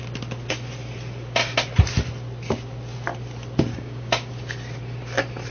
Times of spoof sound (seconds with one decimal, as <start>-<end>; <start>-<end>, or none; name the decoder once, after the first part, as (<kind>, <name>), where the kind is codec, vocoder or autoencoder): 3.7-4.3 (codec, DAC)